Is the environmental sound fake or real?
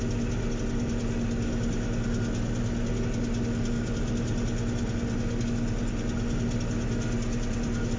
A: real